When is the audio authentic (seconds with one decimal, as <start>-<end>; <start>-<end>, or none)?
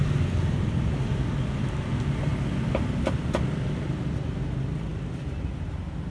0.0-6.1